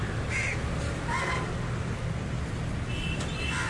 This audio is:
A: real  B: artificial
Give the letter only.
A